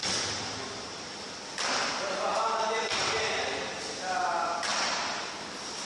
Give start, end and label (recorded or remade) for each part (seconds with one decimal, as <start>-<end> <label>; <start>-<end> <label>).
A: 0.0-1.5 remade; 1.5-2.3 recorded; 2.3-3.1 remade; 3.1-4.7 recorded; 4.7-5.3 remade; 5.3-5.8 recorded